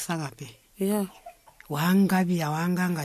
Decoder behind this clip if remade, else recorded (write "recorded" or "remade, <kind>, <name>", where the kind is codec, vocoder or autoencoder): recorded